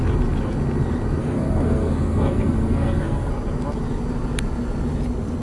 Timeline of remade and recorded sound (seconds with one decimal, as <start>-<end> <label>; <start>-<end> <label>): 0.0-1.2 recorded; 1.2-3.3 remade; 3.3-5.4 recorded